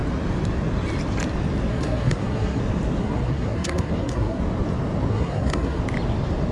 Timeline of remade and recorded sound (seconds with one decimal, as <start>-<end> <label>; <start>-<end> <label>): 0.0-1.7 recorded; 1.7-2.6 remade; 2.6-3.0 recorded; 3.0-4.4 remade; 4.4-5.1 recorded; 5.1-5.8 remade; 5.8-6.5 recorded